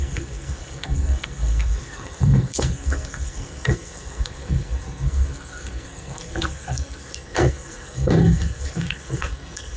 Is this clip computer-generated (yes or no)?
yes